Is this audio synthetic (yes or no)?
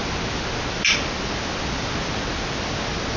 no